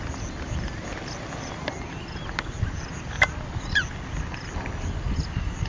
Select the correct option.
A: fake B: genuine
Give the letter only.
B